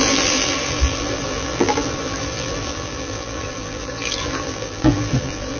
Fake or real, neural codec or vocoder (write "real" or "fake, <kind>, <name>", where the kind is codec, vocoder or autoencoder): fake, vocoder, BigVGAN v2